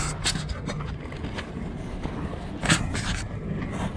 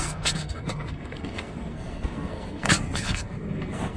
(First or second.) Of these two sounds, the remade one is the second